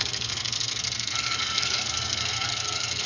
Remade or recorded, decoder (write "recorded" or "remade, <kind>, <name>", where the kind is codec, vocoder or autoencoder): remade, codec, SNAC